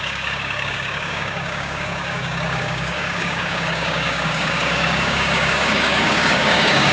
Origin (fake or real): fake